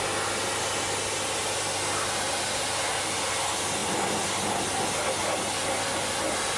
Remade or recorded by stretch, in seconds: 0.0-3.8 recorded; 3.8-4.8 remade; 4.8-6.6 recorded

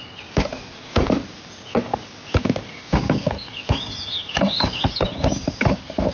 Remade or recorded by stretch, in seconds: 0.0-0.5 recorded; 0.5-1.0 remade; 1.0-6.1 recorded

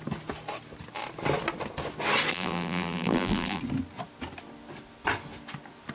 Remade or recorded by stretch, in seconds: 0.0-2.3 recorded; 2.3-3.6 remade; 3.6-5.9 recorded

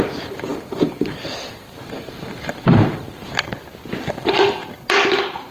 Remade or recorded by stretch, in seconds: 0.0-3.3 remade; 3.3-3.9 recorded; 3.9-4.6 remade; 4.6-5.5 recorded

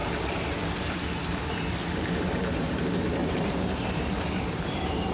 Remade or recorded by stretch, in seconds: 0.0-1.9 recorded; 1.9-5.1 remade

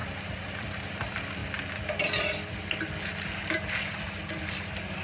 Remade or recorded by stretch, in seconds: 0.0-0.6 recorded; 0.6-1.4 remade; 1.4-4.4 recorded; 4.4-5.0 remade

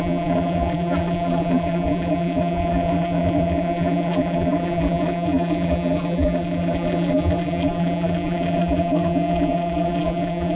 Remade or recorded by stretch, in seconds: 0.0-10.6 remade